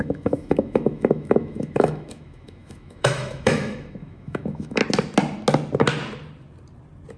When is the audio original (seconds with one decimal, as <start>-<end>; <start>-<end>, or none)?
4.8-7.2